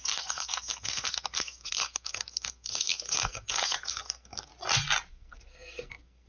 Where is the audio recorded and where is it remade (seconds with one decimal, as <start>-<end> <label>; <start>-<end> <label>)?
0.0-4.5 remade; 4.5-5.1 recorded; 5.1-6.3 remade